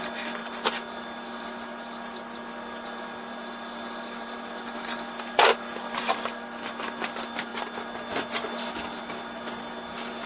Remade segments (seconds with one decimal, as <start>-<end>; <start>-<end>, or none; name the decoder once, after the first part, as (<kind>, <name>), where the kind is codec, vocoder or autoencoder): 0.0-7.5 (vocoder, BigVGAN v2); 9.0-10.3